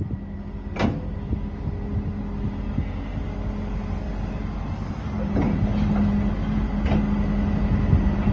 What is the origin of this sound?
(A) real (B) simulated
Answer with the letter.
A